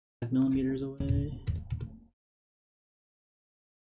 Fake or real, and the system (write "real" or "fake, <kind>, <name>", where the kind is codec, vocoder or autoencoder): real